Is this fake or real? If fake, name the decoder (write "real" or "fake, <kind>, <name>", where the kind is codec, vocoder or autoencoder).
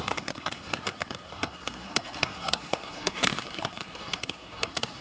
fake, codec, SNAC